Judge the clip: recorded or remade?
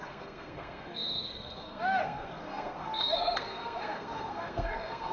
remade